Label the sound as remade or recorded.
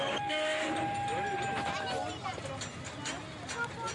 recorded